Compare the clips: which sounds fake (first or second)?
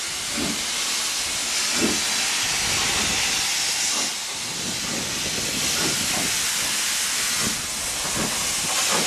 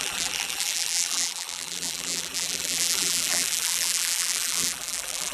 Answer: second